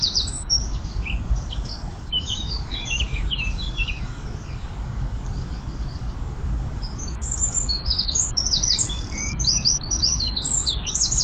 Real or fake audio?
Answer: fake